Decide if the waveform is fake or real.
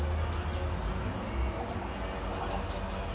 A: real